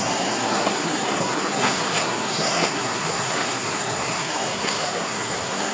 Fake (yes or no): yes